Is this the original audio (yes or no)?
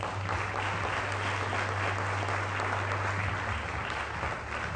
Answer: yes